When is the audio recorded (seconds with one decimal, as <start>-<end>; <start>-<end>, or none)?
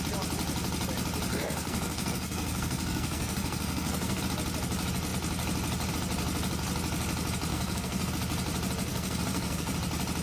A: 0.0-1.3; 4.2-7.5; 8.1-8.9; 9.7-10.2